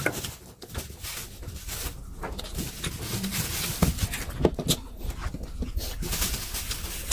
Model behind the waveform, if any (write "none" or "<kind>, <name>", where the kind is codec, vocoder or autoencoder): none